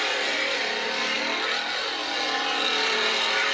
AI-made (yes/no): no